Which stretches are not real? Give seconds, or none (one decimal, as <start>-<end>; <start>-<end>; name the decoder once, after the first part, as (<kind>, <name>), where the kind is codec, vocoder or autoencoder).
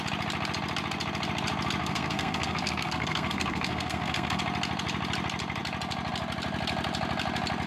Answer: 1.8-4.4 (codec, SNAC)